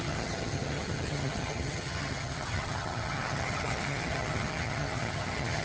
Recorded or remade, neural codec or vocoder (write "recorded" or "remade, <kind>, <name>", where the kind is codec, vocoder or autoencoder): remade, vocoder, HiFi-GAN